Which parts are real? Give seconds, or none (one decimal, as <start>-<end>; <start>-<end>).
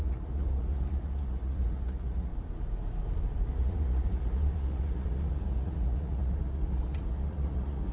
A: 2.3-3.5